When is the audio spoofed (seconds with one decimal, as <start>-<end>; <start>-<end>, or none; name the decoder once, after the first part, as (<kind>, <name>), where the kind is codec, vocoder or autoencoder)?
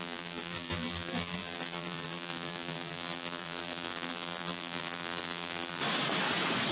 0.0-5.8 (vocoder, BigVGAN v2)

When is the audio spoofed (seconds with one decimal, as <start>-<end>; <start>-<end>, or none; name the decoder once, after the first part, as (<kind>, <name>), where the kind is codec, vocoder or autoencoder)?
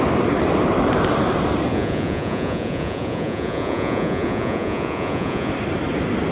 1.7-5.5 (vocoder, Vocos)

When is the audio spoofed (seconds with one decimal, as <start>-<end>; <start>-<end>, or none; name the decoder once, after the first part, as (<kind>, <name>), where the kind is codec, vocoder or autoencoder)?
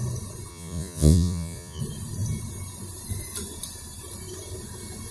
0.5-1.8 (vocoder, Vocos)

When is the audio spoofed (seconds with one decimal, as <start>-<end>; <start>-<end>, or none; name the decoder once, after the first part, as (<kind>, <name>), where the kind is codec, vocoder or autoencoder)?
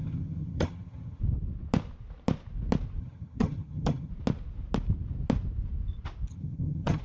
0.0-1.2 (vocoder, HiFi-GAN); 3.0-4.1; 6.3-7.0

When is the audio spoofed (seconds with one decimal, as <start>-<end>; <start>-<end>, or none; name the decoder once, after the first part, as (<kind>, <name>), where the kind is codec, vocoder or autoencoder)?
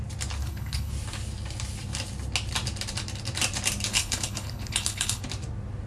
0.4-0.9 (codec, HILCodec); 3.9-5.2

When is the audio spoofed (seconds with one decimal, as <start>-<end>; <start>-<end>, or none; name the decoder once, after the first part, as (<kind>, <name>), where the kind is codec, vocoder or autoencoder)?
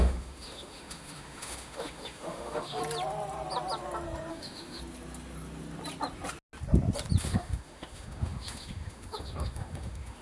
0.0-2.8 (autoencoder, DAC-VAE); 4.3-4.8; 7.2-10.2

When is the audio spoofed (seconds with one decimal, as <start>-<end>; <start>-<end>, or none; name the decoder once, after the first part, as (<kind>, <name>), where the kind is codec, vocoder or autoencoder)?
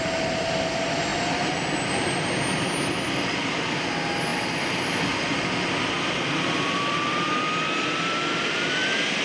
none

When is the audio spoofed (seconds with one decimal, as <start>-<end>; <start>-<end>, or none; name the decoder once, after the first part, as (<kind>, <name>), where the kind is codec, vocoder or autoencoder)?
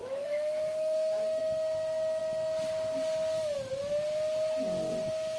0.0-1.4 (autoencoder, DAC-VAE)